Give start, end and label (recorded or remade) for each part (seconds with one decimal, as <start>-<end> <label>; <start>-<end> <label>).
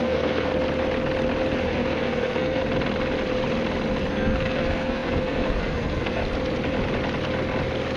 0.0-0.5 remade; 0.5-1.6 recorded; 1.6-2.6 remade; 2.6-4.1 recorded; 4.1-6.2 remade; 6.2-8.0 recorded